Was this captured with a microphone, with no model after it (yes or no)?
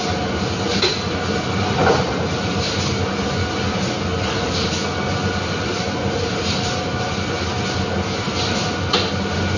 yes